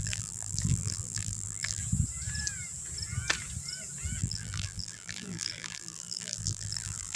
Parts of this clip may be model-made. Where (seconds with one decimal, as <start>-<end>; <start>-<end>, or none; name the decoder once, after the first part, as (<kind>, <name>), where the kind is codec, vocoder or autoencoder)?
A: 0.0-1.8 (vocoder, BigVGAN v2); 4.2-7.2